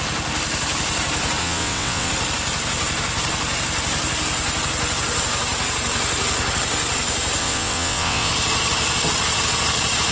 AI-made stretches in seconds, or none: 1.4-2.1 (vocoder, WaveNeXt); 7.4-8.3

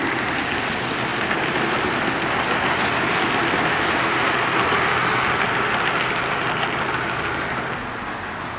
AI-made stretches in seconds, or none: none

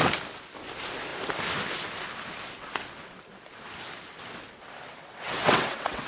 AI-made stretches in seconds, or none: 5.0-6.1 (vocoder, WaveNeXt)